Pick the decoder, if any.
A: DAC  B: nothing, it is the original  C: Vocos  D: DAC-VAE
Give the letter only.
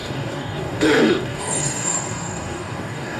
A